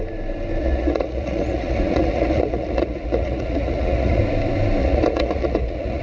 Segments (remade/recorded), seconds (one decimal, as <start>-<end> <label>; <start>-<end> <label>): 0.0-0.6 recorded; 0.6-4.2 remade; 4.2-4.8 recorded; 4.8-6.0 remade